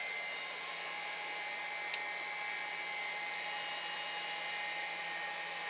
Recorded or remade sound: recorded